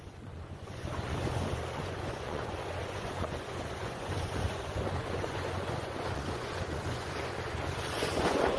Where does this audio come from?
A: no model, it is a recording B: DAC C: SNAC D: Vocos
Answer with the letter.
D